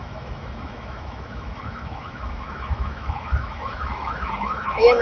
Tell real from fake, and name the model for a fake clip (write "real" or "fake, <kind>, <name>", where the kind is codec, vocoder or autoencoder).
fake, autoencoder, DAC-VAE